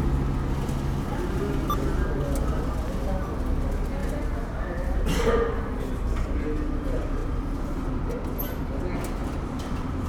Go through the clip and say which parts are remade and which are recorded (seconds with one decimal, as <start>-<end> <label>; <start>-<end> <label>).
0.0-4.0 recorded; 4.0-6.4 remade; 6.4-7.2 recorded; 7.2-8.0 remade; 8.0-9.2 recorded; 9.2-10.1 remade